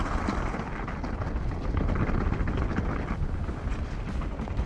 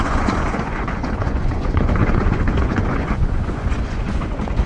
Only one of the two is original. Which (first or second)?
first